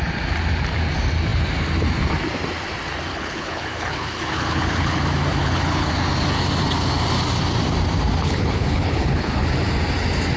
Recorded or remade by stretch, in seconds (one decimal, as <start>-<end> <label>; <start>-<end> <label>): 0.0-3.1 recorded; 3.1-5.0 remade; 5.0-5.4 recorded; 5.4-5.9 remade; 5.9-8.2 recorded; 8.2-9.5 remade; 9.5-10.4 recorded